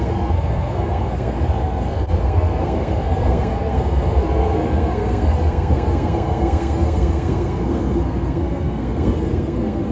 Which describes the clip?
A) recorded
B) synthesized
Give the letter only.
B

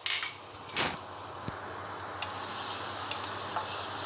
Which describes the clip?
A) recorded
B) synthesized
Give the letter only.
A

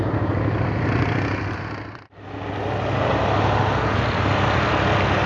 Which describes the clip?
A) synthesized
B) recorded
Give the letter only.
B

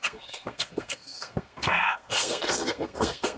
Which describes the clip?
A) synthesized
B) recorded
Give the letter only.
A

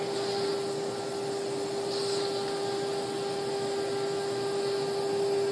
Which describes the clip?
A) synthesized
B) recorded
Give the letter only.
B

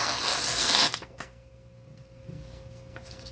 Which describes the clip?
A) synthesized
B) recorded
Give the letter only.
A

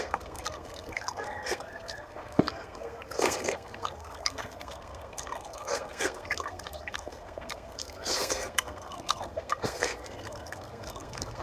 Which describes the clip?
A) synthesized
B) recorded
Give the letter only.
A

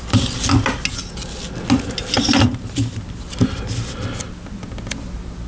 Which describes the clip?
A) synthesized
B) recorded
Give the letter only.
B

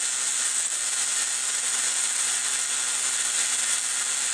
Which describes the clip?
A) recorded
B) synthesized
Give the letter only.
A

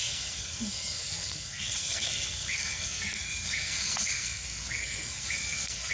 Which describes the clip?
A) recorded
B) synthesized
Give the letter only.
B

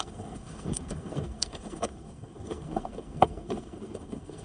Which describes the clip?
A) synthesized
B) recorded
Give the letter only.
A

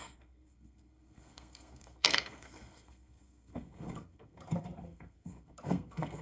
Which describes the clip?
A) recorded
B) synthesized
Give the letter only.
B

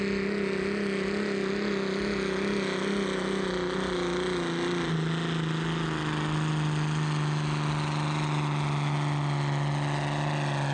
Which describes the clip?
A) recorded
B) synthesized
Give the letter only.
A